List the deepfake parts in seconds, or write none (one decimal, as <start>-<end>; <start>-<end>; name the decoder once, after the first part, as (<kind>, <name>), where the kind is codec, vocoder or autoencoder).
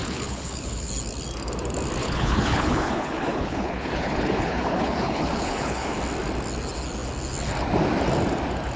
0.0-0.9 (codec, HILCodec); 2.0-6.0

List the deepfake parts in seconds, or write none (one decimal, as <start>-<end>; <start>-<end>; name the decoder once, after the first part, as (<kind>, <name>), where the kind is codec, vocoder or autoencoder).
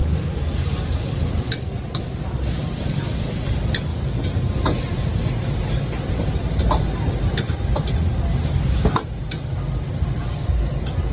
0.0-0.5 (autoencoder, DAC-VAE)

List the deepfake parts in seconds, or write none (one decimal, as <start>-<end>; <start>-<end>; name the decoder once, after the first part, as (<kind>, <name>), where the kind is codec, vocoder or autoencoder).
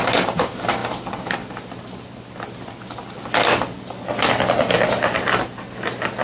0.8-1.8 (vocoder, BigVGAN v2)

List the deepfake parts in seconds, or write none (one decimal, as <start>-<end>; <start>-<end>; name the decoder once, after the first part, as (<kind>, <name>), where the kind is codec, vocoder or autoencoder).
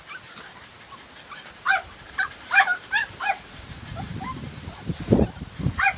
1.7-4.9 (vocoder, BigVGAN v2)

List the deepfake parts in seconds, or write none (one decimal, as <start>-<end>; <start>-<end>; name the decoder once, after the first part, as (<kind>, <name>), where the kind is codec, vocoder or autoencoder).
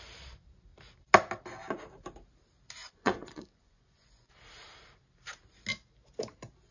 2.8-4.3 (vocoder, Vocos)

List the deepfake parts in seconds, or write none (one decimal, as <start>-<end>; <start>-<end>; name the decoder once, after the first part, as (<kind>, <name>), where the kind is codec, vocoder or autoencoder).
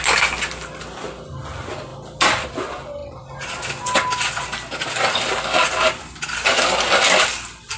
1.9-2.5 (vocoder, BigVGAN v2)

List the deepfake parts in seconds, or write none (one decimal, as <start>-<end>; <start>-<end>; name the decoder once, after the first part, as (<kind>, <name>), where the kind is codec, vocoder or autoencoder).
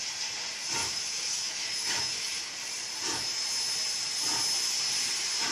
0.8-2.5 (autoencoder, DAC-VAE)